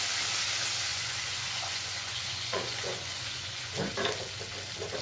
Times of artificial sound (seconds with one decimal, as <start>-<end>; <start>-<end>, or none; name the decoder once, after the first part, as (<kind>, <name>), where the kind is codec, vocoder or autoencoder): 0.9-3.9 (vocoder, Vocos)